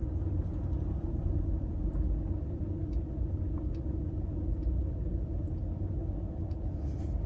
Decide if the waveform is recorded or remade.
recorded